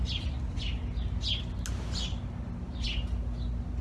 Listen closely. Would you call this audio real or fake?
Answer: real